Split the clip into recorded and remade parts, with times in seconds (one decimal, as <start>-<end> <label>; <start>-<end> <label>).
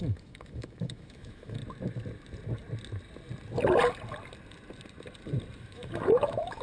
0.0-1.6 remade; 1.6-5.6 recorded; 5.6-6.6 remade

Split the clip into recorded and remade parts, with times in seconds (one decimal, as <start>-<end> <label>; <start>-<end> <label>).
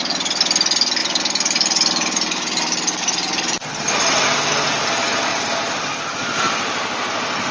0.0-1.0 recorded; 1.0-4.0 remade; 4.0-5.3 recorded; 5.3-5.9 remade; 5.9-7.5 recorded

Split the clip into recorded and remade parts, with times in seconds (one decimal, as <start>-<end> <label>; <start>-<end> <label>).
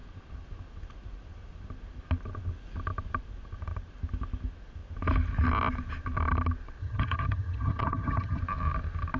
0.0-6.8 recorded; 6.8-8.4 remade; 8.4-9.2 recorded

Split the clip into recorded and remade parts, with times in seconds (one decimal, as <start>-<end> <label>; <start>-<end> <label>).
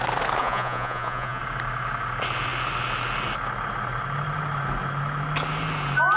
0.0-0.4 recorded; 0.4-1.4 remade; 1.4-6.2 recorded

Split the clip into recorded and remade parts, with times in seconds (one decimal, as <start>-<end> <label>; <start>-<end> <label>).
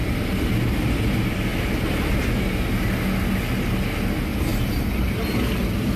0.0-1.0 remade; 1.0-6.0 recorded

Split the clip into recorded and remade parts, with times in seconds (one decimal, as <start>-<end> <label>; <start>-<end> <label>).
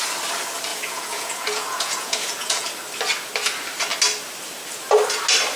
0.0-0.7 recorded; 0.7-2.7 remade; 2.7-5.6 recorded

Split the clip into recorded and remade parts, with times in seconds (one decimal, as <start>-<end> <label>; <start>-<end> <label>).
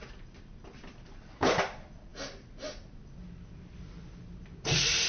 0.0-5.1 recorded